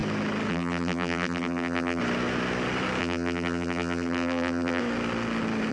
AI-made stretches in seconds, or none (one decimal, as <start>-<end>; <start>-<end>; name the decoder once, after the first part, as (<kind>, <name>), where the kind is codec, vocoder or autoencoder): 0.5-2.0 (vocoder, BigVGAN v2); 3.0-4.8